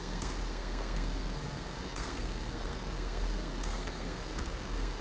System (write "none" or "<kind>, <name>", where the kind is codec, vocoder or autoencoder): codec, SNAC